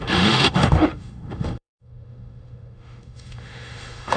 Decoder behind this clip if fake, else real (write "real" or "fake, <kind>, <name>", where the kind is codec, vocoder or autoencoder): fake, autoencoder, DAC-VAE